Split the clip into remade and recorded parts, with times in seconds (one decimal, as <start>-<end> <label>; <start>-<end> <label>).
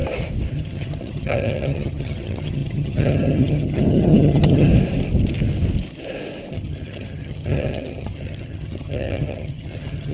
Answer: 0.0-0.5 recorded; 0.5-4.7 remade; 4.7-6.5 recorded; 6.5-10.1 remade